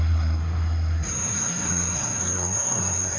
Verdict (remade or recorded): remade